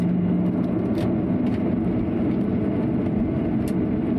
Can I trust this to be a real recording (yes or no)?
yes